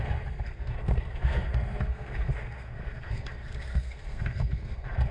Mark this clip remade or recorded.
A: remade